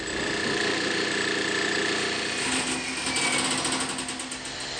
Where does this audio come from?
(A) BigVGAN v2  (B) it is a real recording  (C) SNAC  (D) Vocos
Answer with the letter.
B